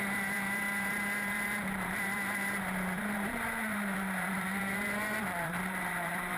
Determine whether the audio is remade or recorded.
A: remade